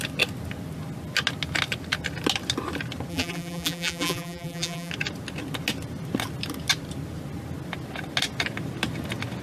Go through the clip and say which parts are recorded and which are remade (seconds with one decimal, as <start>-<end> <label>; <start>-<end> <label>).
0.0-3.1 recorded; 3.1-4.9 remade; 4.9-9.4 recorded